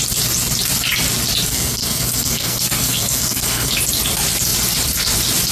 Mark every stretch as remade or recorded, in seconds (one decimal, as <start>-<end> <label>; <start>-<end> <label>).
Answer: 0.0-1.5 recorded; 1.5-3.7 remade; 3.7-5.5 recorded